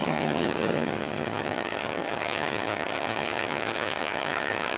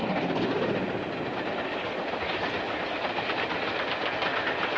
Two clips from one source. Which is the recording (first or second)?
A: second